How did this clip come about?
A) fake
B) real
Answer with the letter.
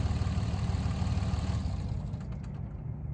B